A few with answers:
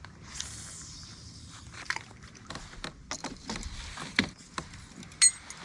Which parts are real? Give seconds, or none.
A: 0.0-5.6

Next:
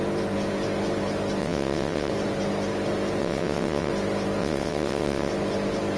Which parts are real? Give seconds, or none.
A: 0.0-1.4; 2.1-3.2; 3.9-4.4; 5.3-6.0